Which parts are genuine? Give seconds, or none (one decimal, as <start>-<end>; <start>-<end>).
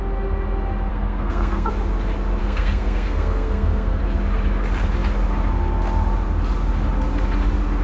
0.0-0.9; 1.7-2.4; 4.0-7.8